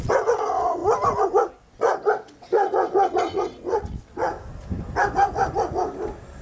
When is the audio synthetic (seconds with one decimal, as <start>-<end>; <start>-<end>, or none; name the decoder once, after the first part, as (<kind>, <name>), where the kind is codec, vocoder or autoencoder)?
0.0-0.8 (vocoder, WaveNeXt); 1.7-4.3